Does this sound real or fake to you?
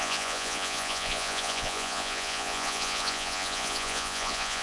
fake